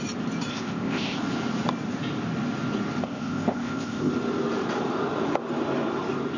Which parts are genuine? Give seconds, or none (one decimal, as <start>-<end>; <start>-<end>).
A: 0.0-0.5; 1.2-3.0; 4.1-6.4